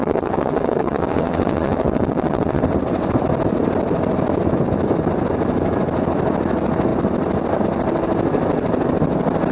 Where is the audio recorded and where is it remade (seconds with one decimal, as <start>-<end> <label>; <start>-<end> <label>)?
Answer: 0.0-2.6 remade; 2.6-9.5 recorded